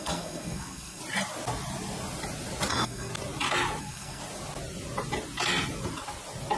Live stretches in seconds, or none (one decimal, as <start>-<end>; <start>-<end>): 1.0-2.7; 3.1-3.8; 4.2-6.6